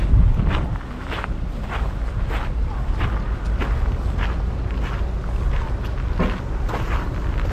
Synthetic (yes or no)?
no